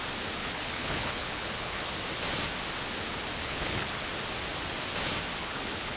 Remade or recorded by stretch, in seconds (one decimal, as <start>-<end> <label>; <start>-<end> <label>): 0.0-0.4 recorded; 0.4-1.9 remade; 1.9-3.4 recorded; 3.4-4.1 remade; 4.1-5.4 recorded; 5.4-6.0 remade